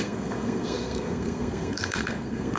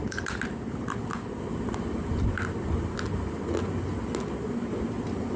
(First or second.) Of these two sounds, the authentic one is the second